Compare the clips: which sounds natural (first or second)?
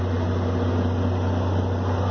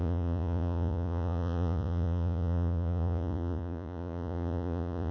first